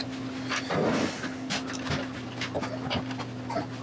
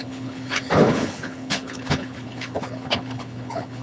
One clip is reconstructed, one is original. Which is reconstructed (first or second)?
second